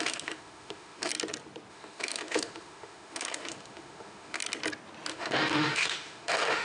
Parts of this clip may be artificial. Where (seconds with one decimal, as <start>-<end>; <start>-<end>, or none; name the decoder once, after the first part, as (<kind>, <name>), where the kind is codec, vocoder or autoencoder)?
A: 0.0-1.1 (autoencoder, DAC-VAE); 1.7-4.4; 5.1-6.6